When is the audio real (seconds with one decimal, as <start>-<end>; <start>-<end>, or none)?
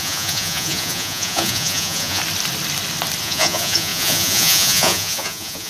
2.2-3.2